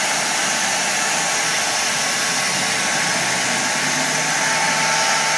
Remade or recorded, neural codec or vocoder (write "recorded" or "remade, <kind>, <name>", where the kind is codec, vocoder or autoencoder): recorded